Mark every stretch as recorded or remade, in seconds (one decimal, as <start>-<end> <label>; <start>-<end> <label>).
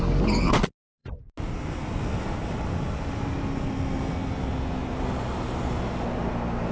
0.0-6.7 recorded